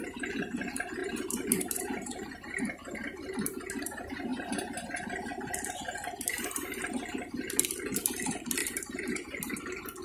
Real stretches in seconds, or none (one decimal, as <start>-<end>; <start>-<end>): 0.0-1.0; 2.6-4.3; 4.9-8.6; 9.6-10.0